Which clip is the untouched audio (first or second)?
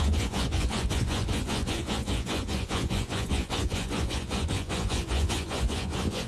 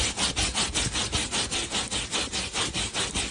second